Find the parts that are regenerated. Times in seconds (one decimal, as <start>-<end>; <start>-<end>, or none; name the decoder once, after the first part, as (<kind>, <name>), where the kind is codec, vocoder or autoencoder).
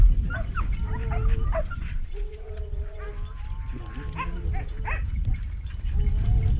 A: 1.6-3.0 (vocoder, Vocos)